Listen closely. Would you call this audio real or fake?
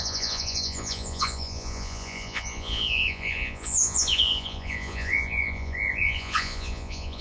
fake